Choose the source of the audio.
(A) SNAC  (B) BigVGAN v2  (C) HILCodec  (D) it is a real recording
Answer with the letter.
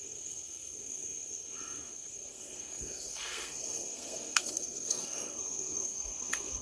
A